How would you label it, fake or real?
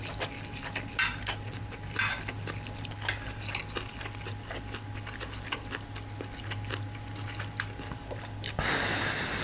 real